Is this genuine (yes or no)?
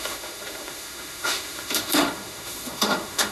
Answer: no